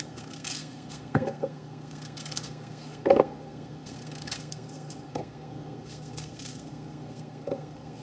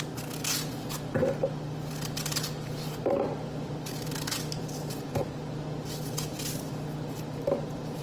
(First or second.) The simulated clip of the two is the first